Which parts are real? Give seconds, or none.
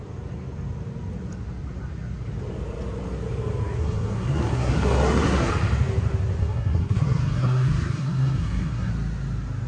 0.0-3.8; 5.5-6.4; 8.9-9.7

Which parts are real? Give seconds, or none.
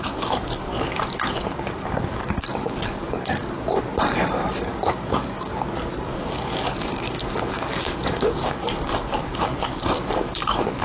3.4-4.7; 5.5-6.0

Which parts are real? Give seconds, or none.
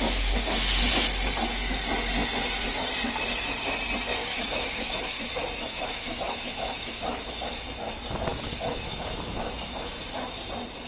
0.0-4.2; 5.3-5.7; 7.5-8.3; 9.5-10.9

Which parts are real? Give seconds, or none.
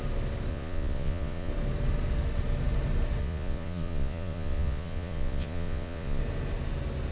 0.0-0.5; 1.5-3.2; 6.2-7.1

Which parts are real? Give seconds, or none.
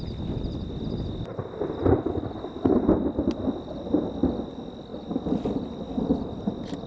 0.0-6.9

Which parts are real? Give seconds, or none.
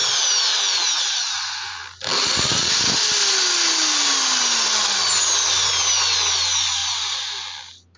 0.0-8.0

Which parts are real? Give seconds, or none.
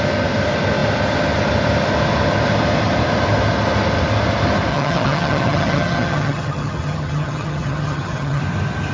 0.0-4.7; 8.4-8.9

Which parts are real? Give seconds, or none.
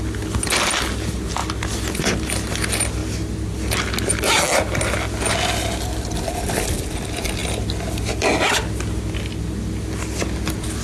0.0-10.8